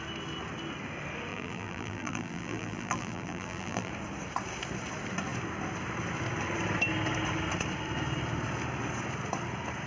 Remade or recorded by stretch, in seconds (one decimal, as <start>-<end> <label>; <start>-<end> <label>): 0.0-1.3 recorded; 1.3-3.9 remade; 3.9-9.9 recorded